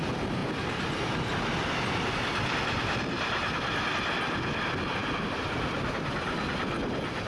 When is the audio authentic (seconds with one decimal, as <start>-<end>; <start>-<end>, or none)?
0.0-0.4; 2.1-5.0; 5.5-7.3